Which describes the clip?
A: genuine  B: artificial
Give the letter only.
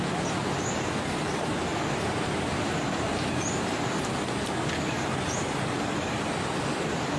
B